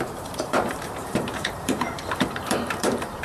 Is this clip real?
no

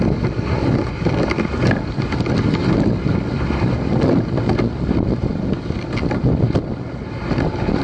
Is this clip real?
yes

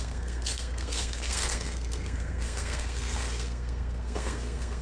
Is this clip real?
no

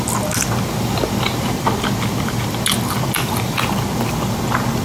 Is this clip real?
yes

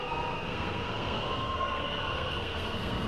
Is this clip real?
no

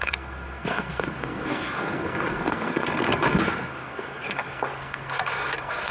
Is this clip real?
no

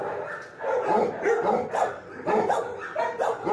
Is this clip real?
yes